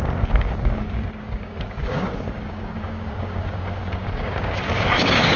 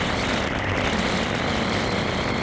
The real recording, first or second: second